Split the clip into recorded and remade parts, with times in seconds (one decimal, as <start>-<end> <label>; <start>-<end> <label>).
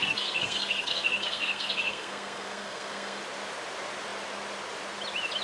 0.0-3.2 remade; 3.2-5.4 recorded